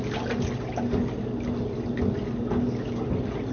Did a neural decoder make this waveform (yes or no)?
no